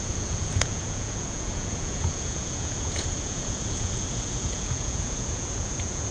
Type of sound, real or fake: fake